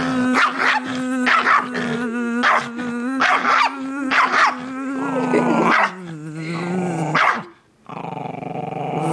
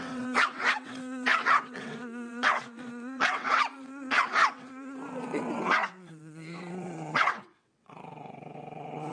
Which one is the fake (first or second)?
second